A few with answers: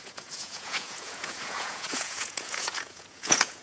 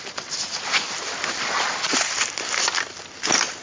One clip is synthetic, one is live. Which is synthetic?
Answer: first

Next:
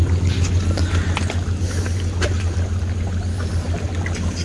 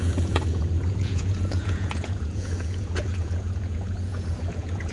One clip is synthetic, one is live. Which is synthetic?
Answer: second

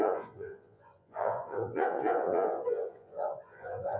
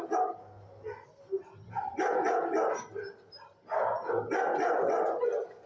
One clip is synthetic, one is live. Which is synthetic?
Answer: first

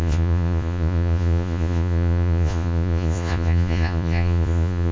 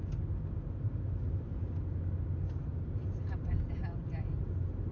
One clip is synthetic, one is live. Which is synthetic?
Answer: first